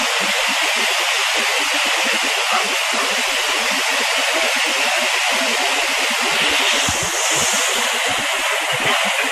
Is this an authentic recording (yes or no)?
yes